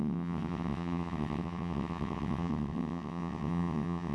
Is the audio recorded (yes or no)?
no